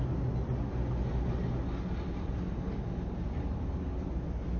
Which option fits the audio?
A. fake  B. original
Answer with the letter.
B